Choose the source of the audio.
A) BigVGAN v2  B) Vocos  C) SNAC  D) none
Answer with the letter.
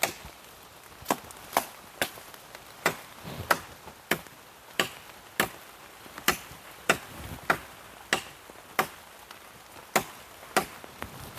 D